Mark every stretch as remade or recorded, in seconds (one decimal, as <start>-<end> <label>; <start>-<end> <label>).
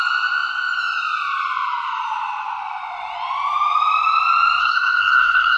0.0-4.6 recorded; 4.6-5.6 remade